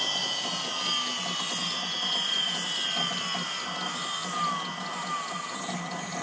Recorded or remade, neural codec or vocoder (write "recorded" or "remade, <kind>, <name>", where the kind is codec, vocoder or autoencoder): recorded